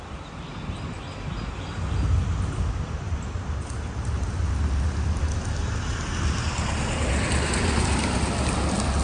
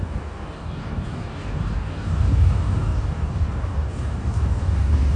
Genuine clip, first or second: first